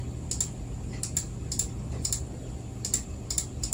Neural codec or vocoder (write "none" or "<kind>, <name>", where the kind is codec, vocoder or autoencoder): none